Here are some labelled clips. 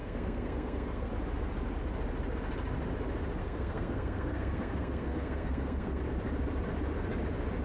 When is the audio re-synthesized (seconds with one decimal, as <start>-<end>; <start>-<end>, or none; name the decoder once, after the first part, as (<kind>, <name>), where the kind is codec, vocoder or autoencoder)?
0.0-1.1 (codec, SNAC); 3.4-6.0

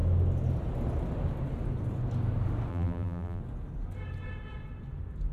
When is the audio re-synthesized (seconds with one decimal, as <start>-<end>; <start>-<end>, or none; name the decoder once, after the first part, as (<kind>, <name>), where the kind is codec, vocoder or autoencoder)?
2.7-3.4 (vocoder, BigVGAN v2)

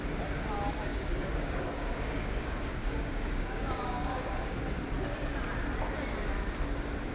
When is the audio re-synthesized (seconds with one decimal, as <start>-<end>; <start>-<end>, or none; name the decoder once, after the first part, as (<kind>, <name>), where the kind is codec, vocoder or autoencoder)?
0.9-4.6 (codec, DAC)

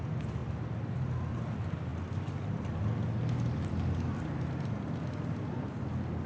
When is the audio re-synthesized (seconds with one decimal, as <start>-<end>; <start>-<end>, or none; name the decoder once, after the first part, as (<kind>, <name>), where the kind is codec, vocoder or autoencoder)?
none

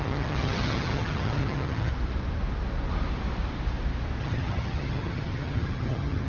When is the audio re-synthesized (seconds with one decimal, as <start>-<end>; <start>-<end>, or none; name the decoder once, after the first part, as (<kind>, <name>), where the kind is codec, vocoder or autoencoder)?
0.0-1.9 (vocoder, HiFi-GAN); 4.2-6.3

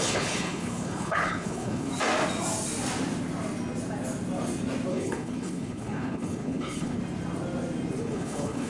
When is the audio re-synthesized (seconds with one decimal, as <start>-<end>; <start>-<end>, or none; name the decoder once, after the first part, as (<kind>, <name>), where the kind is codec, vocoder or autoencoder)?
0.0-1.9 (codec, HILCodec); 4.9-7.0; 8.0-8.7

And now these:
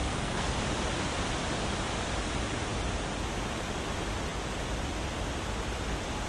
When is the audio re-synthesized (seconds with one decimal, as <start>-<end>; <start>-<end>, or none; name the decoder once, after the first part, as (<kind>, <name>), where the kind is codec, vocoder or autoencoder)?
0.0-0.6 (codec, SNAC)